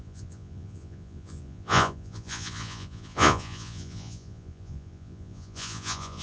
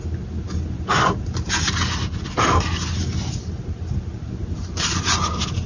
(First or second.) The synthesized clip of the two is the first